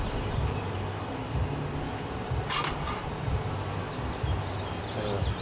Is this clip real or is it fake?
real